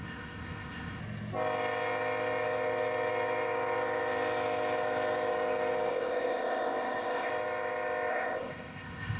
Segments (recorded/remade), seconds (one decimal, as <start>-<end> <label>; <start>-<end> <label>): 0.0-1.0 remade; 1.0-5.9 recorded; 5.9-7.3 remade; 7.3-8.1 recorded; 8.1-9.2 remade